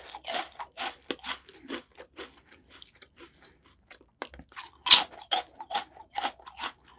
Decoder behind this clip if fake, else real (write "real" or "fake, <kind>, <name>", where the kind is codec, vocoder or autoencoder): real